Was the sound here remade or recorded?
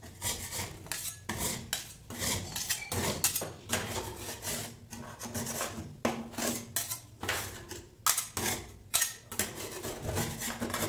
recorded